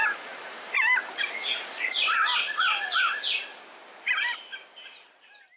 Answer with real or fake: fake